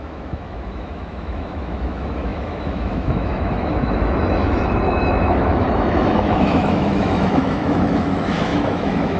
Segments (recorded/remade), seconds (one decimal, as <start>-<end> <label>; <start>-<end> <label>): 0.0-9.2 remade